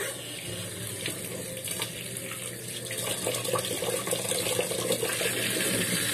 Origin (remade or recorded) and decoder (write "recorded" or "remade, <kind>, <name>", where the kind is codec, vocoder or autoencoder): recorded